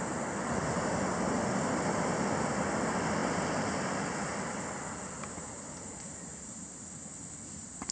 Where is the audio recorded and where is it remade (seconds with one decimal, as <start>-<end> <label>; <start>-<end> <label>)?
0.0-7.9 recorded